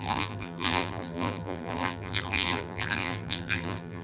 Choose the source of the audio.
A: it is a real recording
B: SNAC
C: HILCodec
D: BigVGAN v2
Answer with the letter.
D